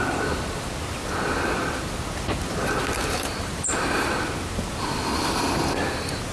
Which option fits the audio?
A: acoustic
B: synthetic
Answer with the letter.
A